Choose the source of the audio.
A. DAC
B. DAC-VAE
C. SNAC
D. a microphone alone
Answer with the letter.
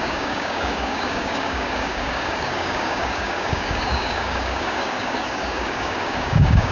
A